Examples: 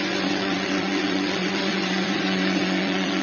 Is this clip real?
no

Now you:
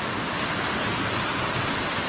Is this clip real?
yes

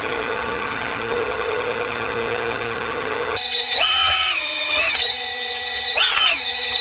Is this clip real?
no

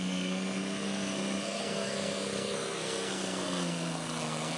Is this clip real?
no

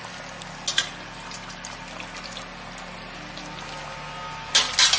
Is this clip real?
yes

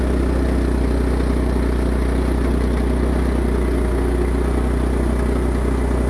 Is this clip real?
yes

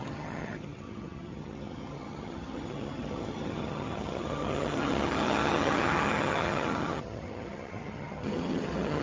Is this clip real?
no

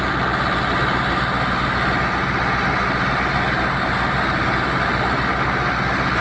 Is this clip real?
yes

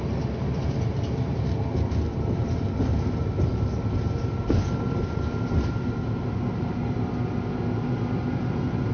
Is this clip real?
yes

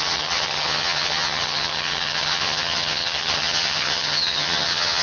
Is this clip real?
no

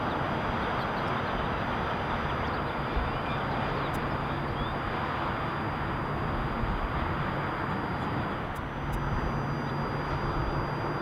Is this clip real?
yes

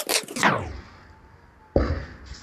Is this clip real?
yes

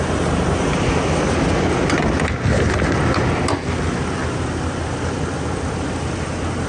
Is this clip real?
yes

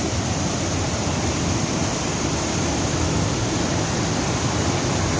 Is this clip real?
yes